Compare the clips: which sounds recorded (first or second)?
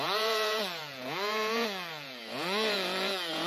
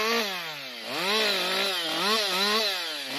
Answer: second